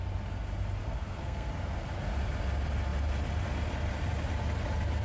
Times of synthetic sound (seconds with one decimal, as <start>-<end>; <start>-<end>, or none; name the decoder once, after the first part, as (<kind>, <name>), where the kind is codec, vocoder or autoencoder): 0.8-1.5 (codec, SNAC)